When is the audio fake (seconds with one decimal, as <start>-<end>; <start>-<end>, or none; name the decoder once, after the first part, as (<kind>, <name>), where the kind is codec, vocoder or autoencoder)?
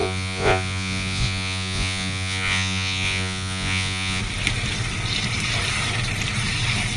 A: 0.0-4.2 (vocoder, Vocos)